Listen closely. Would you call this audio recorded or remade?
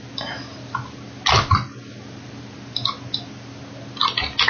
recorded